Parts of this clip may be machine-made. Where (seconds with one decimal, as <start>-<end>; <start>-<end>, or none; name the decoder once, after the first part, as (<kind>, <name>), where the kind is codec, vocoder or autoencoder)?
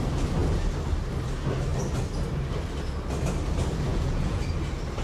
3.9-4.4 (vocoder, Vocos)